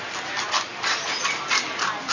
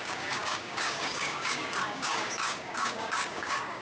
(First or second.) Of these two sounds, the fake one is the second